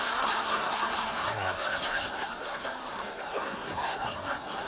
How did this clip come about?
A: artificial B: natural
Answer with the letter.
A